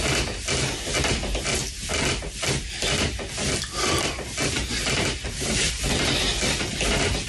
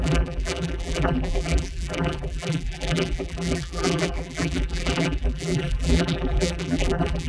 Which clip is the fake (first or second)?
second